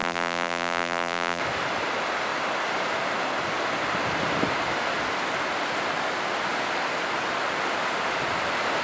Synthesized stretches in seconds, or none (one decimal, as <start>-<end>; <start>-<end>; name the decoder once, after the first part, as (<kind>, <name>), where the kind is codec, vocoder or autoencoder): 0.0-1.4 (vocoder, BigVGAN v2)